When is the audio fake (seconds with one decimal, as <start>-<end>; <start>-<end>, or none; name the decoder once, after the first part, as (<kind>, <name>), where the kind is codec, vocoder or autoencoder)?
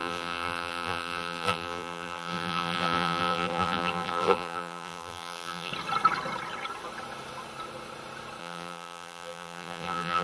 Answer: 0.0-5.7 (vocoder, BigVGAN v2); 8.4-10.2